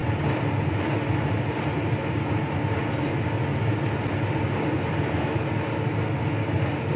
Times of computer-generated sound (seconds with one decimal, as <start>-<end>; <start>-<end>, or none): none